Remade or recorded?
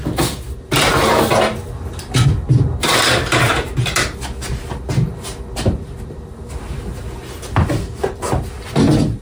recorded